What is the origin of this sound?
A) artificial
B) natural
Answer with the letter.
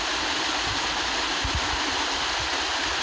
B